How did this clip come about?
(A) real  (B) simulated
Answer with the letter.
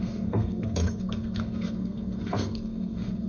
B